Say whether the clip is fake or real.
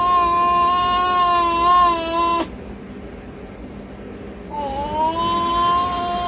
real